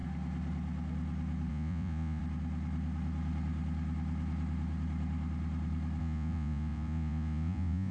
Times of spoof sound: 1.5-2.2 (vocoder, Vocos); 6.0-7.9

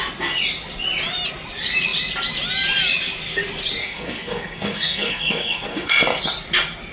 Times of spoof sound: 3.8-5.9 (codec, SNAC)

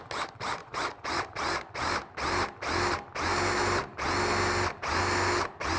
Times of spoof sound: 0.6-1.1 (vocoder, Vocos)

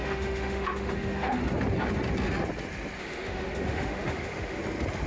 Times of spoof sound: 0.0-1.4 (autoencoder, DAC-VAE); 3.0-4.6

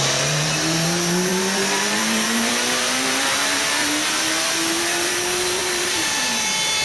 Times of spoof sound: 0.0-6.8 (vocoder, BigVGAN v2)

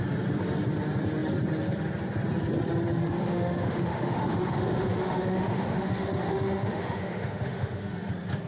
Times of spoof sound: 3.0-8.1 (autoencoder, DAC-VAE)

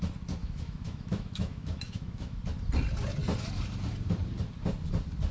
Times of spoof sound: 0.4-2.4 (autoencoder, DAC-VAE)

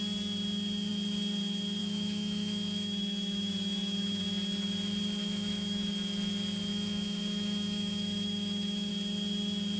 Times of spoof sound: 1.8-4.2 (autoencoder, DAC-VAE); 5.2-5.9; 6.7-8.9